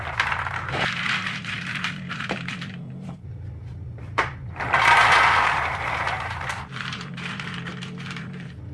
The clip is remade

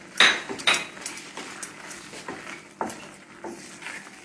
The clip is recorded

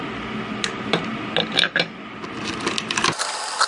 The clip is recorded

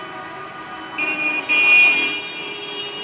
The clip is recorded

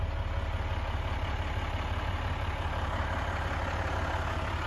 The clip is recorded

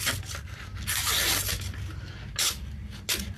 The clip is recorded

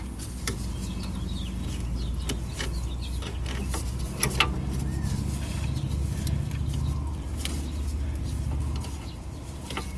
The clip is recorded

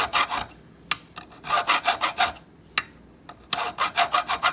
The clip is recorded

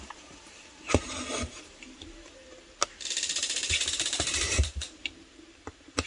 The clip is remade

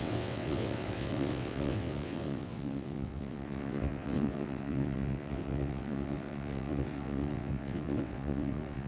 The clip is remade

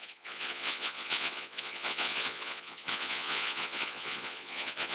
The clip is remade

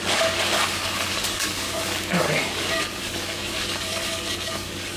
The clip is remade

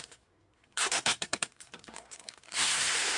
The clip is remade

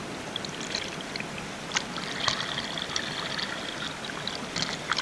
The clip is recorded